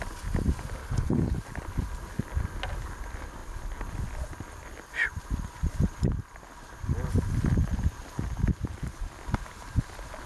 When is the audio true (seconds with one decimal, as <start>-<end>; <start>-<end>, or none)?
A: 0.0-0.8; 1.4-10.3